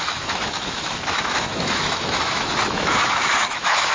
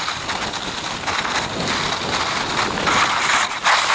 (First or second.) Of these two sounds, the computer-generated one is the first